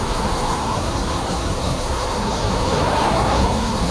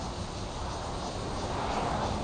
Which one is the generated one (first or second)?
first